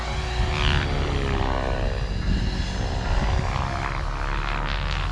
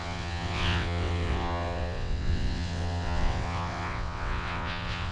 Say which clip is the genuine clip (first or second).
first